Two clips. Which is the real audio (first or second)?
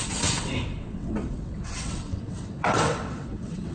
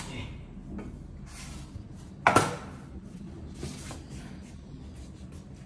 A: second